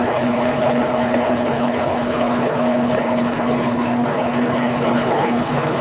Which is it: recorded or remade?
remade